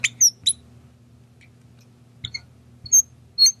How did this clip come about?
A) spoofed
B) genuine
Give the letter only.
B